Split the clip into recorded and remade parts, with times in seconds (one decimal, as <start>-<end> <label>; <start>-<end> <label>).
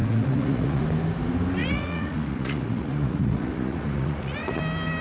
0.0-0.8 remade; 0.8-1.6 recorded; 1.6-4.6 remade; 4.6-5.0 recorded